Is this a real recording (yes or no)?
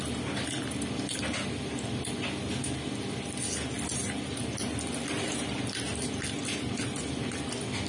yes